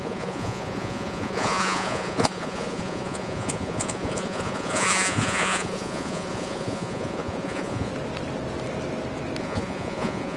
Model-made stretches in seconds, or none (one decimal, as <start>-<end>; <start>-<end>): 0.0-7.9; 9.4-10.4